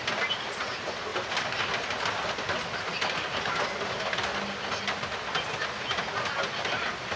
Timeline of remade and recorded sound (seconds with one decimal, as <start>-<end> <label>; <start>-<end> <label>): 0.0-7.2 recorded